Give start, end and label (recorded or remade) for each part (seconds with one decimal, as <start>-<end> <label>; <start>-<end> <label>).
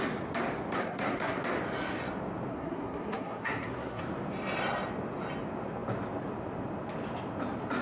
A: 0.0-0.7 recorded; 0.7-1.4 remade; 1.4-2.5 recorded; 2.5-4.0 remade; 4.0-7.8 recorded